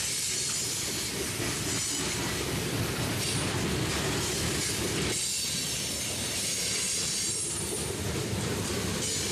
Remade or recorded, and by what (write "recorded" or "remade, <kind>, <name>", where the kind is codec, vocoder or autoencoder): recorded